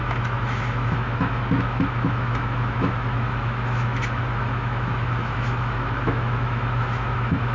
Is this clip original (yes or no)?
no